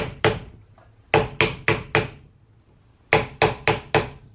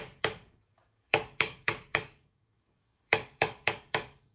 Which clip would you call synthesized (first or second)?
second